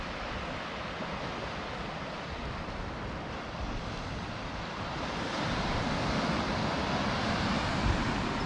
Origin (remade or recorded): recorded